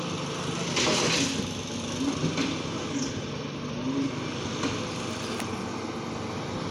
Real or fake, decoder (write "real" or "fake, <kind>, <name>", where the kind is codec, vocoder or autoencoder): real